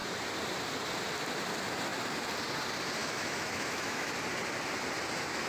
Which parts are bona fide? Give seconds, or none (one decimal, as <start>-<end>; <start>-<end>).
0.0-3.0; 4.1-5.5